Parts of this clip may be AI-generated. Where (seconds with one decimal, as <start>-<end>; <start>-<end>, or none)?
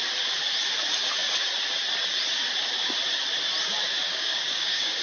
4.1-5.0